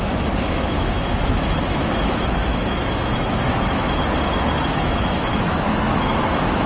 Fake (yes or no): yes